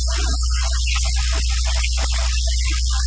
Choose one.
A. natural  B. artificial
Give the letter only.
A